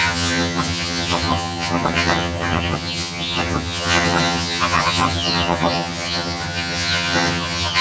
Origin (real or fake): fake